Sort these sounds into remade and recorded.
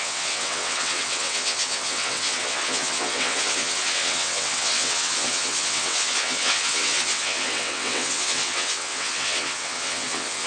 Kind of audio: remade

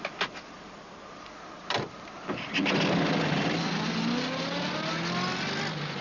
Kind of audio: recorded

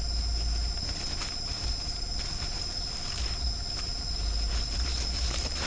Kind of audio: recorded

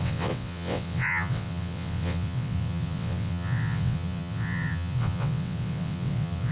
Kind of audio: remade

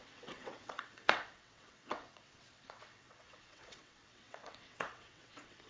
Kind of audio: remade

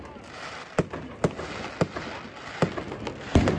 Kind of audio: recorded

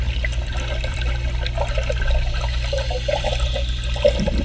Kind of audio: recorded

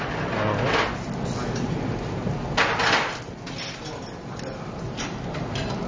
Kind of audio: recorded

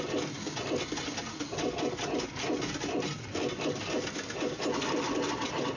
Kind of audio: recorded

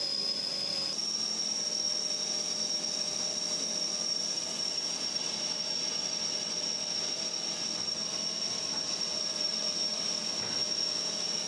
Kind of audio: recorded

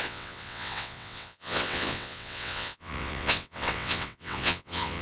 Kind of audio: remade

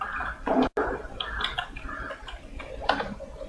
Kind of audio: recorded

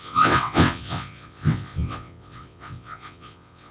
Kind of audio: remade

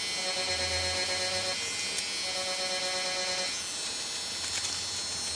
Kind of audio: recorded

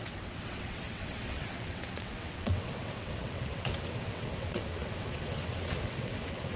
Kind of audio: remade